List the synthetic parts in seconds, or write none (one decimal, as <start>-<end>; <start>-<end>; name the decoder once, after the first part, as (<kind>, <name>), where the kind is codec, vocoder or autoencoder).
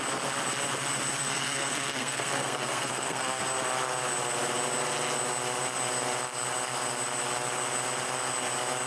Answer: 1.2-3.4 (codec, SNAC)